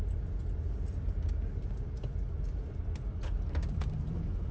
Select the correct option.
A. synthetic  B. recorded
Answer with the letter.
B